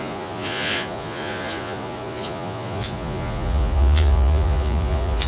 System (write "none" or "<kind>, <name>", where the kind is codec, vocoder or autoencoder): vocoder, Vocos